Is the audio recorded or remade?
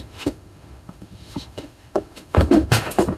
remade